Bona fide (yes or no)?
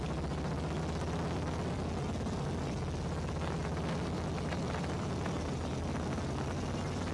yes